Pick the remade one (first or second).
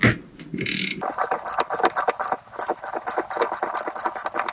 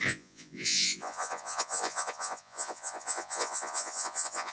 second